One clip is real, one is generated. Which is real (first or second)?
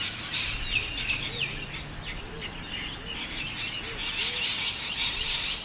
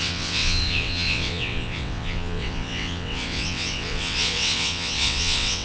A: first